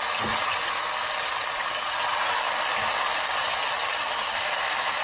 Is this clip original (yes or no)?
yes